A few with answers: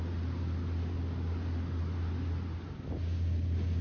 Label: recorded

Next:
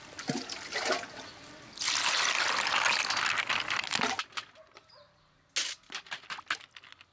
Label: recorded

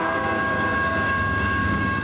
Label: remade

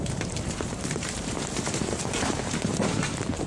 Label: remade